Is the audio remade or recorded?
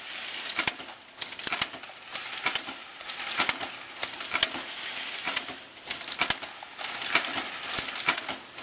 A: recorded